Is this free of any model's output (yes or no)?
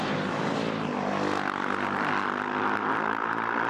yes